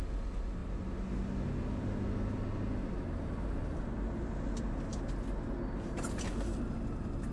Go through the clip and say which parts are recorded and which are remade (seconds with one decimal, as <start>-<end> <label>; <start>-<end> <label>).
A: 0.0-7.3 recorded